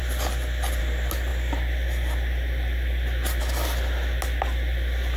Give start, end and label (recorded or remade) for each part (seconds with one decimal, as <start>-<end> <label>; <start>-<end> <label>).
0.0-5.2 recorded